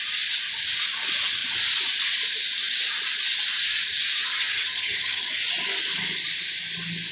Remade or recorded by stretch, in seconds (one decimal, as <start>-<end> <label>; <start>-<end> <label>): 0.0-4.2 recorded; 4.2-5.3 remade; 5.3-7.1 recorded